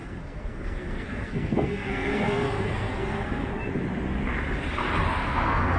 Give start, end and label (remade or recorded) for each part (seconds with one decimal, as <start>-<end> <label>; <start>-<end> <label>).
0.0-3.5 remade; 3.5-5.1 recorded; 5.1-5.8 remade

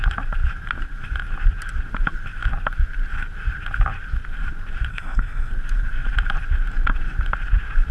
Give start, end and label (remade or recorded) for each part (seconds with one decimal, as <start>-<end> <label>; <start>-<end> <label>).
0.0-4.9 recorded; 4.9-5.5 remade; 5.5-7.9 recorded

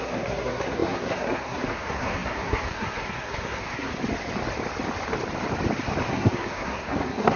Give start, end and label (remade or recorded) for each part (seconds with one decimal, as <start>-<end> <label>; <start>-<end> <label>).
0.0-3.9 remade; 3.9-6.1 recorded; 6.1-7.4 remade

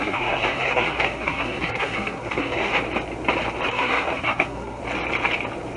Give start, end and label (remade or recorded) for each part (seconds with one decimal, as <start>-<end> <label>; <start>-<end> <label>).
0.0-2.7 remade; 2.7-3.7 recorded; 3.7-4.8 remade; 4.8-5.8 recorded

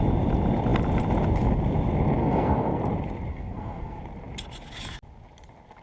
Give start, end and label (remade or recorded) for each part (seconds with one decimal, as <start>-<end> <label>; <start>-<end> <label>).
0.0-2.2 recorded; 2.2-2.8 remade; 2.8-3.3 recorded; 3.3-4.0 remade; 4.0-5.8 recorded